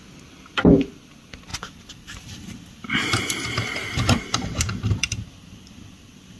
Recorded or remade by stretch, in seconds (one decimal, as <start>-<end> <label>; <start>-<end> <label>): 0.0-1.5 recorded; 1.5-5.3 remade; 5.3-6.4 recorded